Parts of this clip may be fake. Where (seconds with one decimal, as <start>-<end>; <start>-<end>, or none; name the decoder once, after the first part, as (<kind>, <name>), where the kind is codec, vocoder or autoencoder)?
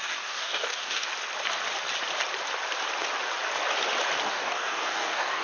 0.0-1.1 (codec, DAC); 4.3-5.4